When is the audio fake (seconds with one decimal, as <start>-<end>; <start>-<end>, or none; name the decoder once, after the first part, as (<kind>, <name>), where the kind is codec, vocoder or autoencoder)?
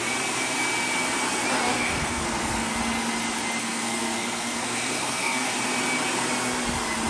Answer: 1.7-2.7 (codec, SNAC); 3.6-5.5